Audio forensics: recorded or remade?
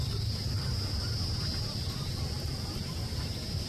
recorded